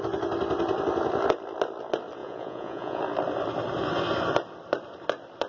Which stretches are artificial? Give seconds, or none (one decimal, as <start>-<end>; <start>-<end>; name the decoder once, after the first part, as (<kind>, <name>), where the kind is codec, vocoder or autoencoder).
2.2-3.0 (vocoder, Vocos)